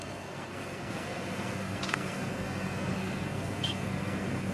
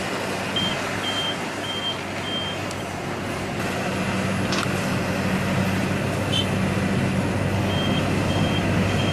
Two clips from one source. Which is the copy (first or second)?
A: first